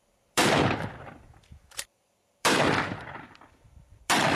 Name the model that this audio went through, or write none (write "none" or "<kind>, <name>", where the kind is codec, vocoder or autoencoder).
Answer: vocoder, BigVGAN v2